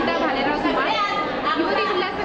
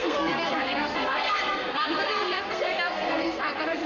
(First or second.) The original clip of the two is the first